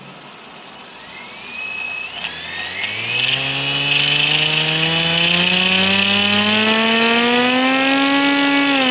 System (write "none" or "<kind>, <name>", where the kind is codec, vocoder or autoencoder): none